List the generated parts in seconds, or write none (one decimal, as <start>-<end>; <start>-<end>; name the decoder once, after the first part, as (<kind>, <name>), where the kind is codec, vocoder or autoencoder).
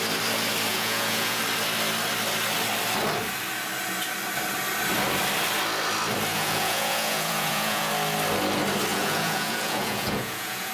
0.7-1.4 (vocoder, Vocos); 6.3-7.9; 8.9-10.7